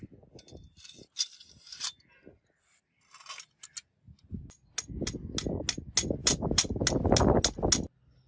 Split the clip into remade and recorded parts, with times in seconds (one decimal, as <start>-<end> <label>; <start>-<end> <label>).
0.0-1.7 recorded; 1.7-2.8 remade; 2.8-6.2 recorded; 6.2-6.8 remade; 6.8-8.3 recorded